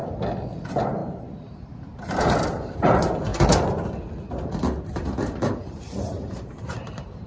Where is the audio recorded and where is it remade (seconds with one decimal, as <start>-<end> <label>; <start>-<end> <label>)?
0.0-0.6 recorded; 0.6-3.3 remade; 3.3-4.9 recorded; 4.9-7.3 remade